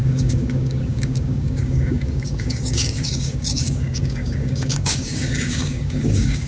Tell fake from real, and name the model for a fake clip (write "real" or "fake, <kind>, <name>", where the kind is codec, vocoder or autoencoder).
fake, codec, DAC